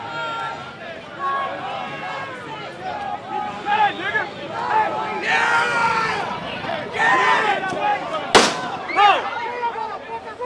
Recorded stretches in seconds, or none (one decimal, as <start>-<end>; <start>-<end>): 0.0-5.8; 7.0-10.4